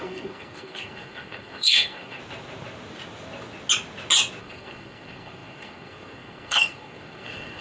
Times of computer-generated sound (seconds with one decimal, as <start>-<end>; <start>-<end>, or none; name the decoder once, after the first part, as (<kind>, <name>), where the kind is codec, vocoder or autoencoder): 0.0-2.2 (codec, SNAC); 4.4-7.6